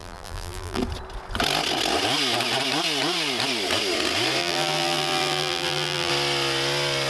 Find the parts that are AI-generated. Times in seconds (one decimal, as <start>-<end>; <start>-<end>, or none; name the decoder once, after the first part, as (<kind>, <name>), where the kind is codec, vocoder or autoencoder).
0.0-0.8 (vocoder, BigVGAN v2); 4.4-6.1